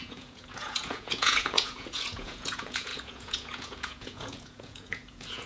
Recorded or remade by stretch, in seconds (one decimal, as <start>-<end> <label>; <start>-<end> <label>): 0.0-5.5 remade